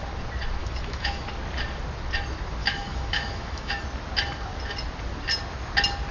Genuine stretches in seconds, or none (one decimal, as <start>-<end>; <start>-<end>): 0.0-0.6; 1.2-2.6; 3.8-6.1